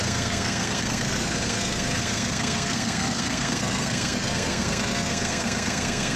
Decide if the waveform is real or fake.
fake